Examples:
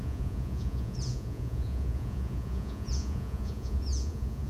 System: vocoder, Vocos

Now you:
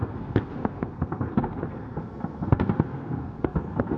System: codec, SNAC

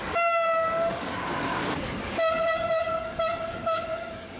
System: codec, DAC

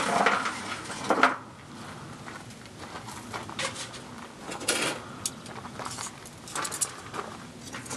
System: none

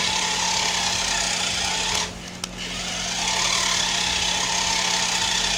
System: none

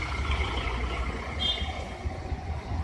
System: vocoder, Vocos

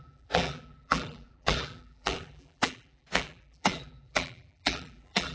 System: vocoder, BigVGAN v2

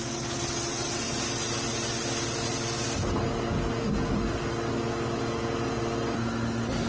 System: none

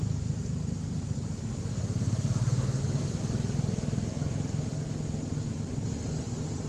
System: none